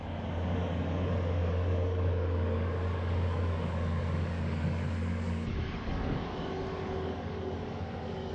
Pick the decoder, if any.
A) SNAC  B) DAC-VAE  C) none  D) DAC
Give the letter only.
D